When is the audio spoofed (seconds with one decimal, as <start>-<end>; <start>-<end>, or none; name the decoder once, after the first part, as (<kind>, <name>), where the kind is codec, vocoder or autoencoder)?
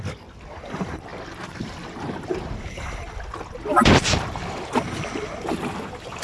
3.7-4.4 (vocoder, BigVGAN v2)